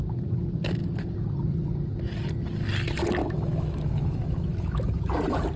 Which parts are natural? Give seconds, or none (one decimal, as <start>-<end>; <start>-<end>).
0.0-3.2; 5.1-5.6